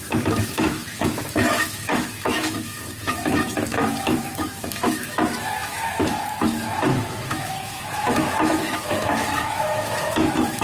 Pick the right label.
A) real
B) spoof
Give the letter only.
B